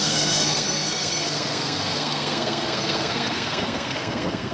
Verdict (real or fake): fake